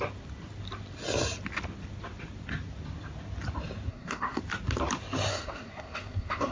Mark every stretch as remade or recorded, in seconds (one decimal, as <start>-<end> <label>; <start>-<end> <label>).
0.0-3.9 recorded; 3.9-4.4 remade; 4.4-5.3 recorded; 5.3-6.5 remade